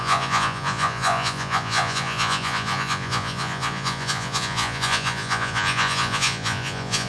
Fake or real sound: fake